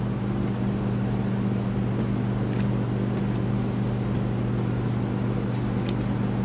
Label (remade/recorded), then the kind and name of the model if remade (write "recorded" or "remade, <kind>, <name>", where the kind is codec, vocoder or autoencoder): recorded